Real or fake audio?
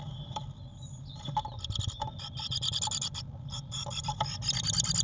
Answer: real